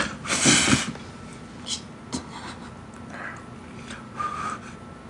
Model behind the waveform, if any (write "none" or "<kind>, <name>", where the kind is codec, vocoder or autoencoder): none